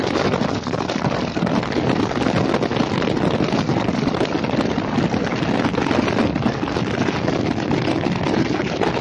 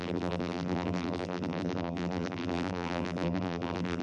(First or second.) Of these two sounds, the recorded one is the first